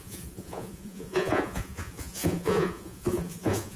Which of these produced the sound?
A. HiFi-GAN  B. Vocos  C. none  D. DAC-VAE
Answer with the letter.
B